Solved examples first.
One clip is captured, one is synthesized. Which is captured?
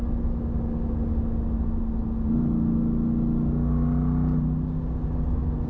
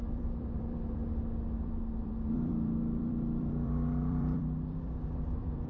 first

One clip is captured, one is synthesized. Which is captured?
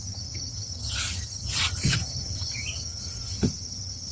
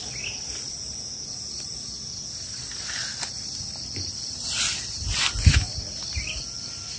second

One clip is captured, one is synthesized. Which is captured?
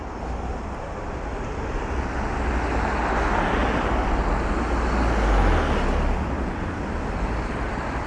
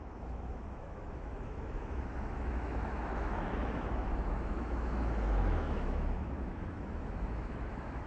first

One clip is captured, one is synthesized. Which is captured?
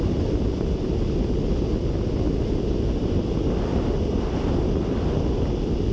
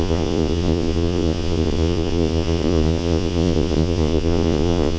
first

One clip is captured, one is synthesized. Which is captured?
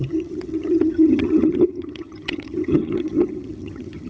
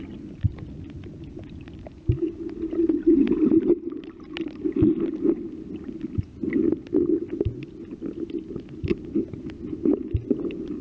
second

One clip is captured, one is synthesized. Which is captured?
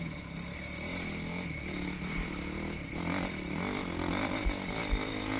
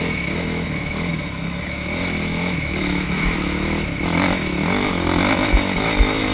first